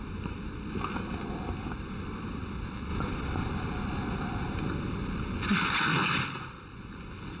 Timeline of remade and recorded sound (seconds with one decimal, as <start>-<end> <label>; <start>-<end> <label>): 0.0-7.4 recorded